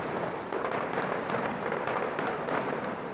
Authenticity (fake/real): real